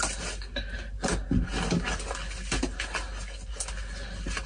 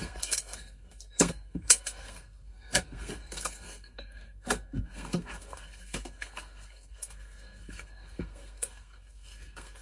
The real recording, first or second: first